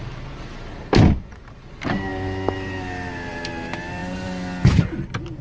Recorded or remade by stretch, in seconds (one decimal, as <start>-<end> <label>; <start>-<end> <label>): 0.0-5.4 recorded